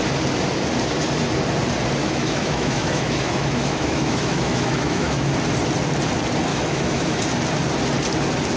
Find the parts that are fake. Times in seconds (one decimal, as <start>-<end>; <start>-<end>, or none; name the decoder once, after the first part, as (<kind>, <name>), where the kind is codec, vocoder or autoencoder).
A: 2.0-5.3 (autoencoder, DAC-VAE); 6.5-7.2